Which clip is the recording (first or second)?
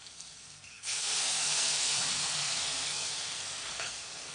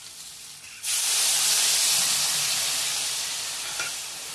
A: second